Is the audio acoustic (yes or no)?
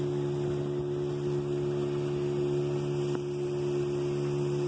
yes